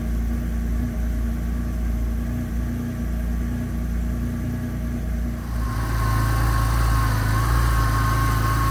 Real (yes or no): yes